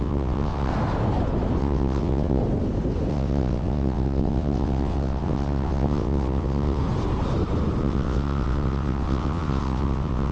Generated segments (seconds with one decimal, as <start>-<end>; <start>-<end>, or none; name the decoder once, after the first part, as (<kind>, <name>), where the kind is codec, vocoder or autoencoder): 0.0-0.7 (vocoder, WaveNeXt); 1.6-2.4; 3.1-6.8; 7.8-10.3